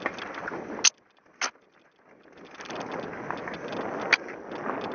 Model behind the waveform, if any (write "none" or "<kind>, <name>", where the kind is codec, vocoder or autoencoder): none